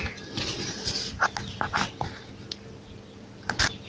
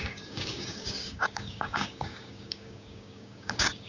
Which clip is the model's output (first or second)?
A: second